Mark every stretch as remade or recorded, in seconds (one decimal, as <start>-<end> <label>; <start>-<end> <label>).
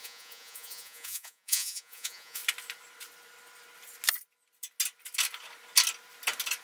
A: 0.0-2.4 remade; 2.4-6.6 recorded